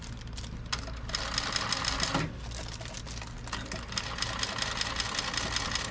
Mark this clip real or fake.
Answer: real